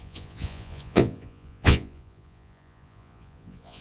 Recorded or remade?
remade